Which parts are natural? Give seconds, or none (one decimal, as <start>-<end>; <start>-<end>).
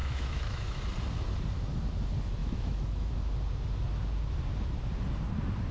0.8-2.4; 3.1-5.7